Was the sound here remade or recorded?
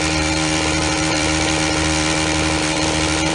remade